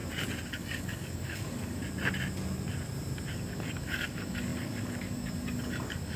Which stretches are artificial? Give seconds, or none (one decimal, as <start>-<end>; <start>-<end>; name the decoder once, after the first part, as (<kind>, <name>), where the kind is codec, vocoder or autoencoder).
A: 0.5-1.8 (codec, DAC); 3.3-6.2